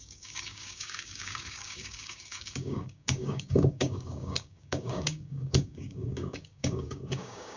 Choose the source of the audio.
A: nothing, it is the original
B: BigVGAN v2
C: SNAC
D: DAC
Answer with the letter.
D